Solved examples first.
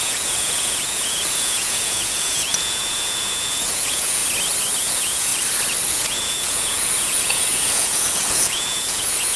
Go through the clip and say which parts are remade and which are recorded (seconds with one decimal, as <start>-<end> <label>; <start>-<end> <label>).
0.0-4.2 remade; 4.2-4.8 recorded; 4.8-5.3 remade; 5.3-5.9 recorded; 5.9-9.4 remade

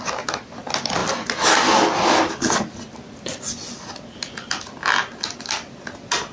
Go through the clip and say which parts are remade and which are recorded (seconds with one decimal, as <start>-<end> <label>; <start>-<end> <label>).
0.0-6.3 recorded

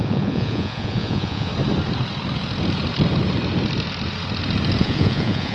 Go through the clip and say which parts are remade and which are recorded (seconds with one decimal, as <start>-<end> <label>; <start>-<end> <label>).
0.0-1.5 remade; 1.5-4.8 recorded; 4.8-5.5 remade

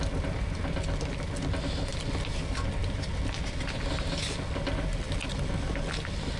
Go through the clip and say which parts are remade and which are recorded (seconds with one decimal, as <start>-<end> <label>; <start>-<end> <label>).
0.0-6.4 recorded

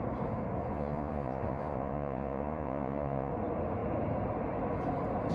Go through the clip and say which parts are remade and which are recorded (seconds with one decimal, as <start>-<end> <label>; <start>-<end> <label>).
0.0-0.6 recorded; 0.6-3.3 remade; 3.3-5.3 recorded